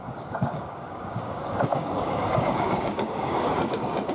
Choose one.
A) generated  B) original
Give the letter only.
A